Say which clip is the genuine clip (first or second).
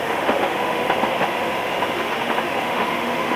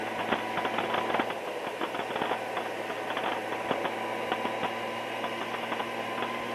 second